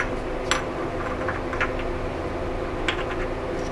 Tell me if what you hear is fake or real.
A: real